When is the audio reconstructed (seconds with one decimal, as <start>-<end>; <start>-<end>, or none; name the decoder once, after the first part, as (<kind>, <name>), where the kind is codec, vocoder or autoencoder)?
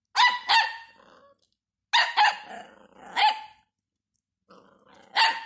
none